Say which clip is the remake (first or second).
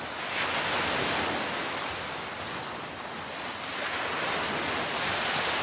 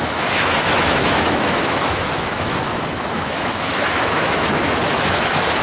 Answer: second